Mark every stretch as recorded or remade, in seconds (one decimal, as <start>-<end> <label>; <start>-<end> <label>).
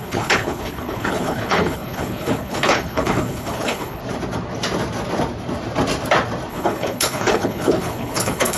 0.0-4.0 remade; 4.0-6.5 recorded; 6.5-8.6 remade